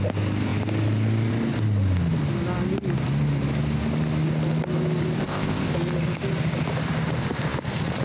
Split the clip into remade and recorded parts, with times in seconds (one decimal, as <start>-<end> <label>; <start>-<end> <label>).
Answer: 0.0-5.2 recorded; 5.2-5.7 remade; 5.7-8.0 recorded